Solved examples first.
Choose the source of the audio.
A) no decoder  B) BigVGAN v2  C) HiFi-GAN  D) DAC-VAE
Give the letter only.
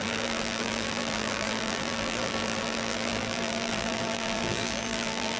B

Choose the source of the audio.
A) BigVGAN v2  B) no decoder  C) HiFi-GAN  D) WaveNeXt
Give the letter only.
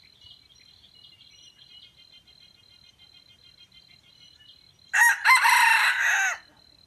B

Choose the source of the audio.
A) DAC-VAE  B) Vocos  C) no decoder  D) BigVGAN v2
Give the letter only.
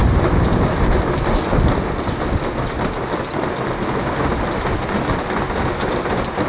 C